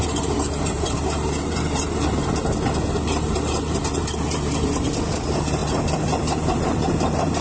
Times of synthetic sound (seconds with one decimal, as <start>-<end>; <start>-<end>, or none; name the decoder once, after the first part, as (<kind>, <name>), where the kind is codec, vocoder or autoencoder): 0.0-7.4 (vocoder, BigVGAN v2)